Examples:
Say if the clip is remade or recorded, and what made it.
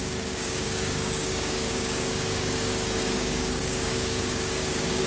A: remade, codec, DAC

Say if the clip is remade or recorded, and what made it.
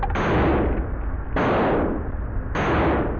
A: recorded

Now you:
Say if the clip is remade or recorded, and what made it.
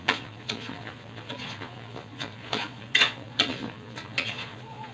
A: remade, vocoder, Vocos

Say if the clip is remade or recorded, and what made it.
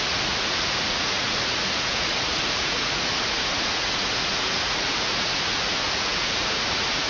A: remade, vocoder, Vocos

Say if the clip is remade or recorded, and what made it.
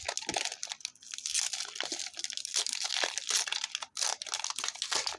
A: recorded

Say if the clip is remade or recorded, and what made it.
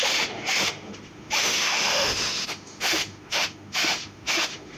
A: remade, autoencoder, DAC-VAE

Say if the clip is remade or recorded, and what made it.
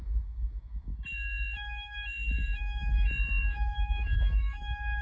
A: remade, autoencoder, DAC-VAE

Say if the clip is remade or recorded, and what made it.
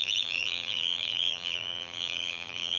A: remade, vocoder, BigVGAN v2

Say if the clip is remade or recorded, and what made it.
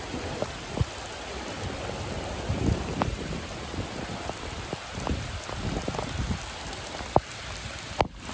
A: recorded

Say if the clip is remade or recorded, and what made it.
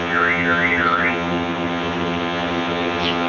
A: remade, vocoder, HiFi-GAN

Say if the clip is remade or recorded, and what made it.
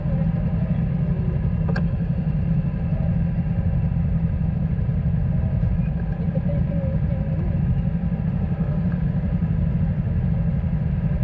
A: recorded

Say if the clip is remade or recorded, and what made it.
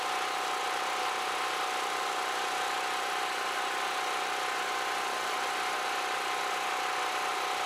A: recorded